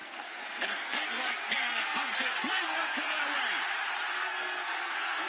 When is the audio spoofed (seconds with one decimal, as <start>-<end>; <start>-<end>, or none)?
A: 0.0-3.2; 4.2-5.3